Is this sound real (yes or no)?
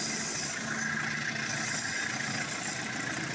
yes